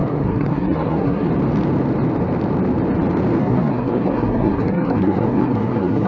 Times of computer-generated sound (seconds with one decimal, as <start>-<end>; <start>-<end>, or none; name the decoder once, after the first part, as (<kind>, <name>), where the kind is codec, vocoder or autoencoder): 0.0-1.3 (codec, SNAC); 3.4-6.1

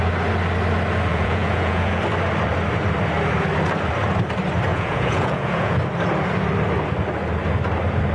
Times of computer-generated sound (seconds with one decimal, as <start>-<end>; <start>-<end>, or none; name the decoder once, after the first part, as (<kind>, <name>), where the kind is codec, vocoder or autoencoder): 1.1-2.0 (vocoder, Vocos); 4.7-5.8

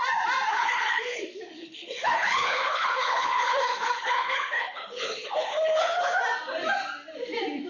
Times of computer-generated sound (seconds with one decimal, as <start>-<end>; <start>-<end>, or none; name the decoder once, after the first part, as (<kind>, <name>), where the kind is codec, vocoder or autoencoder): 0.5-1.2 (codec, HILCodec); 1.6-6.2

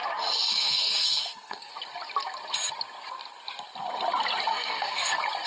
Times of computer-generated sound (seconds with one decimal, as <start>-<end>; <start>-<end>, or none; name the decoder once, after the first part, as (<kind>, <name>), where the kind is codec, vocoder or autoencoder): 0.5-1.7 (codec, SNAC); 4.5-5.1

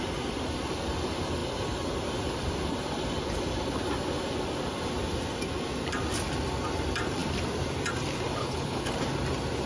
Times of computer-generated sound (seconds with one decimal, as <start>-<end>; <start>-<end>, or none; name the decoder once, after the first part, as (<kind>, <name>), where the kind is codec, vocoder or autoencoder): 8.4-8.9 (codec, HILCodec)